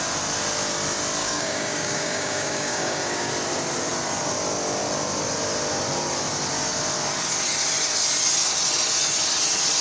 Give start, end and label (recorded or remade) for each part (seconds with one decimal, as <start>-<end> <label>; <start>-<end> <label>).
0.0-1.2 recorded; 1.2-3.3 remade; 3.3-9.8 recorded